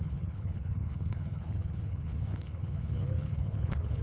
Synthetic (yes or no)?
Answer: yes